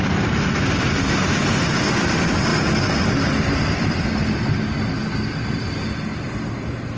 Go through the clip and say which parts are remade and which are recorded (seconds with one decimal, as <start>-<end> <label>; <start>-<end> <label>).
0.0-7.0 recorded